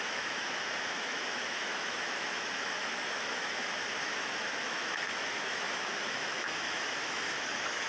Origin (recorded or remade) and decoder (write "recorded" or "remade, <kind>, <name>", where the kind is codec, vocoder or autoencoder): remade, autoencoder, DAC-VAE